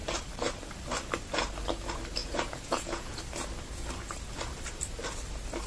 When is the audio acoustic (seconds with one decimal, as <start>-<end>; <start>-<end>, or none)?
0.0-2.2; 3.2-5.7

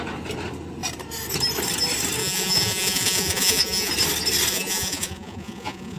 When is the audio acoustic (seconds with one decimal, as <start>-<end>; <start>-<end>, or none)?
0.0-2.2; 3.9-4.5

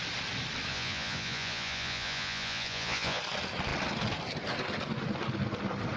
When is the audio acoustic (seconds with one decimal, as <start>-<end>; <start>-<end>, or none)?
0.0-0.7; 3.2-6.0

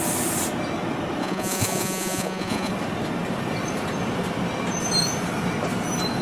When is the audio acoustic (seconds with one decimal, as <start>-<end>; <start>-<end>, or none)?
0.0-1.2; 2.7-6.2

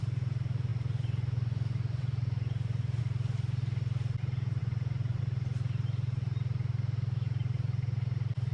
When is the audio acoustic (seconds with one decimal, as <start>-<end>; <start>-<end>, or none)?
0.0-0.7; 3.0-4.6; 5.2-8.5

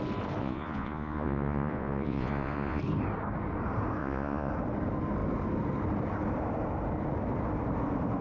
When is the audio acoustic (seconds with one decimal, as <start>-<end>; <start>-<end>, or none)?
0.0-0.4; 2.8-4.0; 4.5-8.2

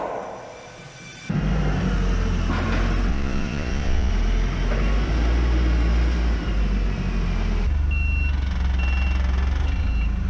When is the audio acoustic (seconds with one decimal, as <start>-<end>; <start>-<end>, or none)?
0.0-3.1; 4.1-10.3